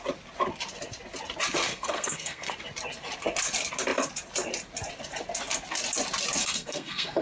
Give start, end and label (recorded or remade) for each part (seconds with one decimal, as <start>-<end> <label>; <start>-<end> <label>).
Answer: 0.0-1.7 recorded; 1.7-2.5 remade; 2.5-6.4 recorded; 6.4-7.2 remade